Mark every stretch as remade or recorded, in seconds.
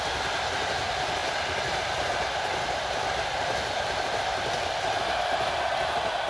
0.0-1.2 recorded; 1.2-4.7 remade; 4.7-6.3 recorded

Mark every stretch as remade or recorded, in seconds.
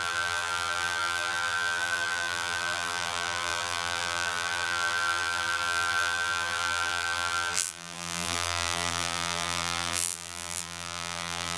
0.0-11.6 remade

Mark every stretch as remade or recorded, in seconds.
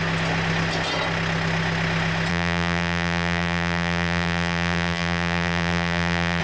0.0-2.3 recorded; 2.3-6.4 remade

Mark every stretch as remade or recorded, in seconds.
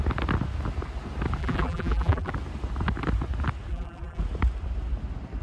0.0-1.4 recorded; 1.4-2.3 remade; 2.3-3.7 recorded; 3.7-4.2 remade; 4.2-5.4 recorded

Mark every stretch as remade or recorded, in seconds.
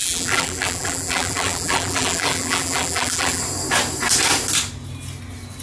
0.0-3.4 remade; 3.4-5.6 recorded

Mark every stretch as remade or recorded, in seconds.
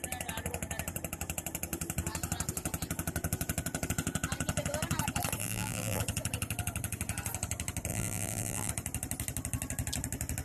0.0-5.4 recorded; 5.4-6.0 remade; 6.0-7.9 recorded; 7.9-8.7 remade; 8.7-10.4 recorded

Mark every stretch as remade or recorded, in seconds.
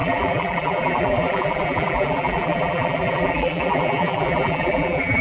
0.0-5.2 remade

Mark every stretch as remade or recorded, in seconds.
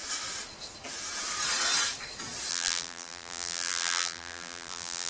0.0-2.5 recorded; 2.5-5.1 remade